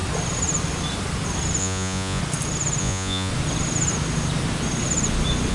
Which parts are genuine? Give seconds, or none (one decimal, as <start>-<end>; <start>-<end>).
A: 0.0-1.6; 2.2-2.8; 3.3-5.5

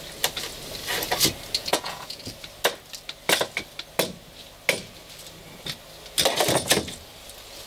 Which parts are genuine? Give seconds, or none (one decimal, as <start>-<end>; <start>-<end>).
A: 0.0-1.6; 2.2-7.7

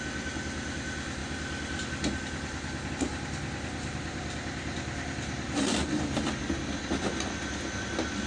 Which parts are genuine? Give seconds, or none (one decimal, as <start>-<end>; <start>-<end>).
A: 0.0-8.3

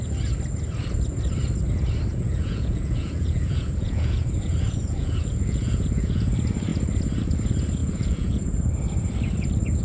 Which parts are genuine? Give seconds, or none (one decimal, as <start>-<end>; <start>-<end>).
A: 0.0-2.1; 6.3-7.8; 8.7-9.8

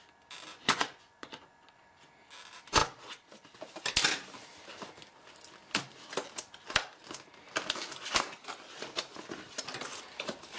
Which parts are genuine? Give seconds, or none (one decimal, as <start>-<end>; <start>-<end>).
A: 0.0-0.5; 2.1-10.6